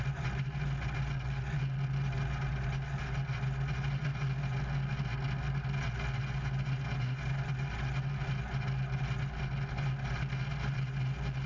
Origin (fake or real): real